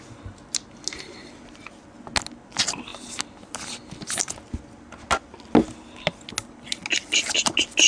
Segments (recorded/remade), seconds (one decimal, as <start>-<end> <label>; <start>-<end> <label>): 0.0-7.9 recorded